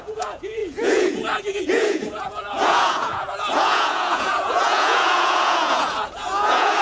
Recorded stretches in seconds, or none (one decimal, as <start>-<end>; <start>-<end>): none